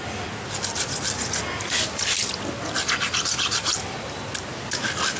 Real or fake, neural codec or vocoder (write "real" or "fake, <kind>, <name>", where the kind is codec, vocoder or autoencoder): real